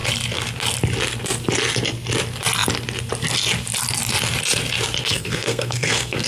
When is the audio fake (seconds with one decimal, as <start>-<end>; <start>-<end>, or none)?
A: 5.0-6.3